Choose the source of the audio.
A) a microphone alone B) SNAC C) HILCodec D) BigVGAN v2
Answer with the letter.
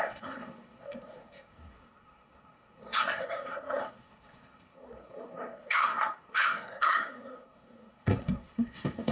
B